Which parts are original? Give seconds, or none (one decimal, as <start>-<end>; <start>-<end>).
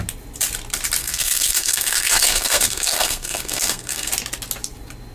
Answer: 0.0-1.0; 4.1-5.1